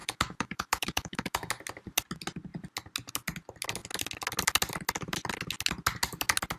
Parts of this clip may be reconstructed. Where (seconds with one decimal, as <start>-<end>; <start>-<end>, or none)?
0.0-1.5